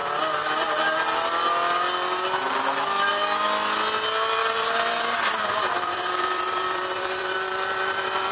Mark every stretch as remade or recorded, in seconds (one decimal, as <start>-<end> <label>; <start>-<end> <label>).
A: 0.0-4.4 recorded; 4.4-8.3 remade